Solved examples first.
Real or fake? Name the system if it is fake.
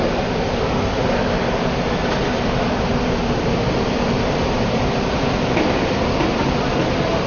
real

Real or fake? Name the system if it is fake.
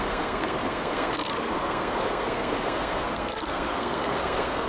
fake, codec, SNAC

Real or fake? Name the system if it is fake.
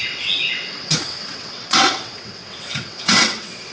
fake, vocoder, WaveNeXt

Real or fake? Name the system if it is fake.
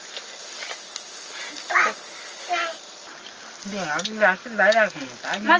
real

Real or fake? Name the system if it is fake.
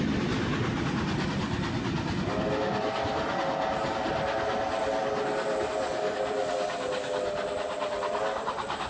real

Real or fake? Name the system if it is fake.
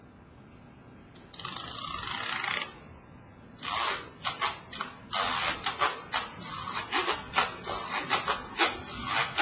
real